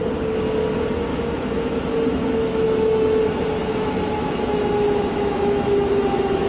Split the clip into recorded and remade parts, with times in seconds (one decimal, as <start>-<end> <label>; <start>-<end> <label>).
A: 0.0-1.1 recorded; 1.1-1.8 remade; 1.8-2.2 recorded; 2.2-3.2 remade; 3.2-3.6 recorded; 3.6-6.5 remade